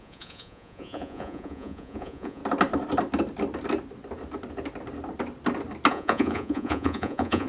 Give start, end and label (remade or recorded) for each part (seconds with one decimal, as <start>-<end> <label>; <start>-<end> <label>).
0.0-2.4 remade; 2.4-5.9 recorded; 5.9-7.5 remade